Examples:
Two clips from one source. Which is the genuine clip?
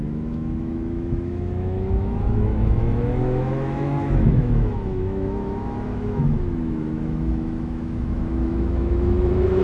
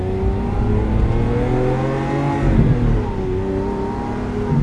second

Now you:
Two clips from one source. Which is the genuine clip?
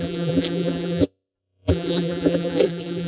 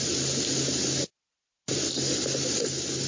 second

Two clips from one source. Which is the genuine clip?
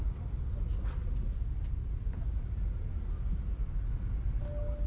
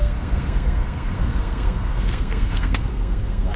first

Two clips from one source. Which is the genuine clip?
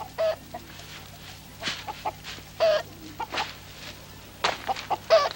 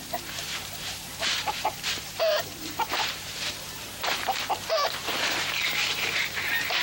first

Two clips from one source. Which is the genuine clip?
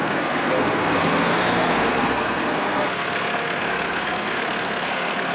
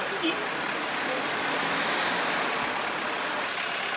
second